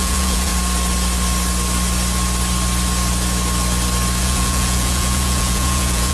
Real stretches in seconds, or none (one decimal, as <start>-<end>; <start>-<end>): 0.5-4.2